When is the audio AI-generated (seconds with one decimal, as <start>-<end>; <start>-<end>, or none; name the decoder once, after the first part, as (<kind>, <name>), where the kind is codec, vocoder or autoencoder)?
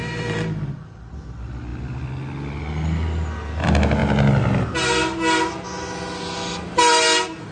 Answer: 0.0-1.1 (vocoder, BigVGAN v2)